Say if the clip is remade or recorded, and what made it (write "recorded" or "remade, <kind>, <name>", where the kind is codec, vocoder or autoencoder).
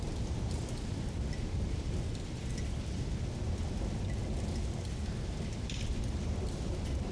recorded